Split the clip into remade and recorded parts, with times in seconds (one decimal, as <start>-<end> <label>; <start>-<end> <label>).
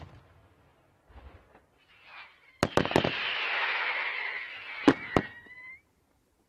0.0-6.5 recorded